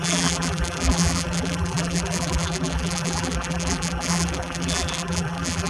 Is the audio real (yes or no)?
no